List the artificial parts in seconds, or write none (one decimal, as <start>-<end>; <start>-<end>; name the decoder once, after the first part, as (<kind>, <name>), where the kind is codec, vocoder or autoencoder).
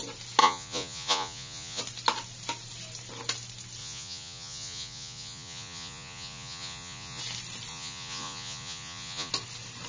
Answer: 0.4-1.8 (vocoder, Vocos); 3.8-7.2; 7.7-9.3